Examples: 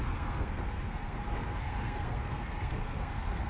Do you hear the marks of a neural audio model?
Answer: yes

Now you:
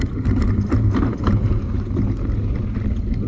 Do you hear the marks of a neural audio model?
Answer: no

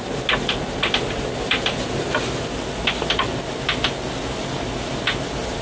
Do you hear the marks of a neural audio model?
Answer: no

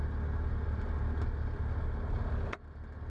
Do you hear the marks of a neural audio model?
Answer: no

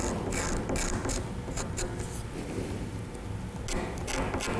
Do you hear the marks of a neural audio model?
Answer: no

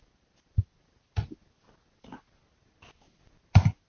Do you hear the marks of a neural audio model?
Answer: no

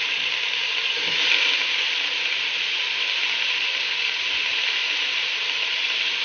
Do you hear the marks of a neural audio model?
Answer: no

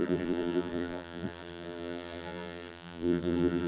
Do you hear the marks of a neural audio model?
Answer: yes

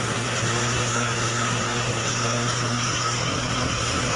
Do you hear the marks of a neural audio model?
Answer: yes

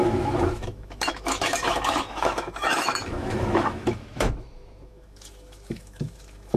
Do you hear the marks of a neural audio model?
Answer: yes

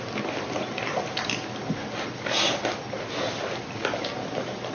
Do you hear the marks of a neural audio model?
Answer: no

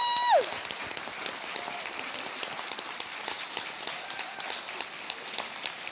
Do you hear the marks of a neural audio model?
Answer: no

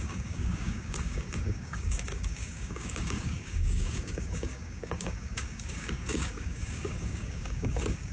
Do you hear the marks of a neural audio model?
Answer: yes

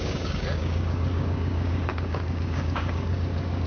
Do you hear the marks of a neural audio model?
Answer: yes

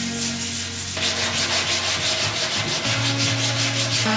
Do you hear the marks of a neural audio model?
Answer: no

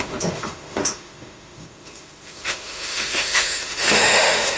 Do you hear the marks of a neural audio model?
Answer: yes